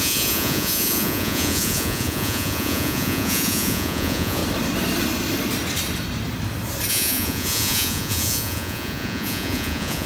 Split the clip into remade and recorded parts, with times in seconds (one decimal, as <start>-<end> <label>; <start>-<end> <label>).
0.0-4.4 remade; 4.4-6.9 recorded; 6.9-10.1 remade